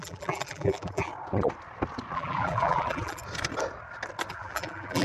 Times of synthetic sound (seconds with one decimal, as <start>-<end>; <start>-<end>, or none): 0.0-1.1; 2.1-3.2; 4.3-5.0